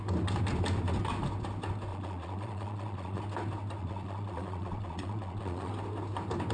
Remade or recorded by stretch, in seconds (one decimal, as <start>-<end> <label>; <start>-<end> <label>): 0.0-1.9 recorded; 1.9-3.2 remade; 3.2-3.8 recorded; 3.8-5.7 remade; 5.7-6.5 recorded